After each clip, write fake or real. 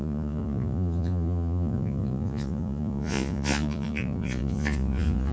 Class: fake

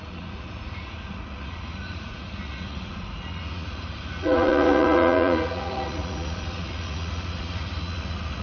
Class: fake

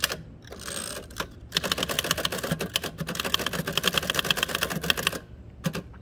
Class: real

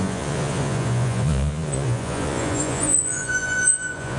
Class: fake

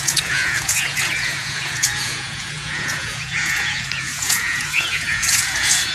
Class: fake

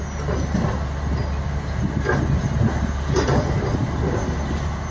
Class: real